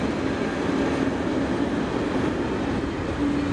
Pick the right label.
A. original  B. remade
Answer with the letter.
A